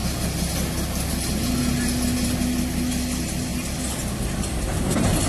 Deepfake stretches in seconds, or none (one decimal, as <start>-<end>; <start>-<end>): none